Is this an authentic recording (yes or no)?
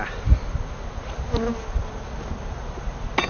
yes